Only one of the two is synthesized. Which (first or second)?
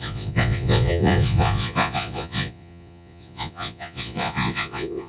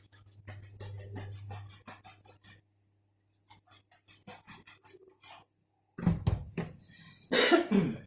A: first